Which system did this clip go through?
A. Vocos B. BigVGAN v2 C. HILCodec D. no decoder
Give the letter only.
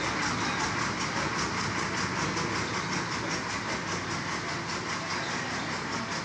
D